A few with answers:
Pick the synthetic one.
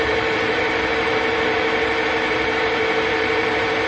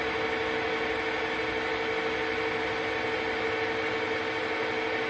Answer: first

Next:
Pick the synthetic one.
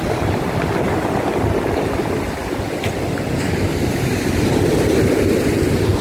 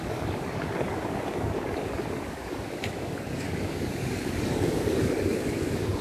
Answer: second